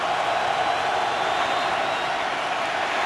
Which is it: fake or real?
real